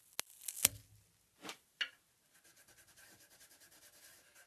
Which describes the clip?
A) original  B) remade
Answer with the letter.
A